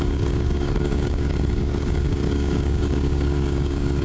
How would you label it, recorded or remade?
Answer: remade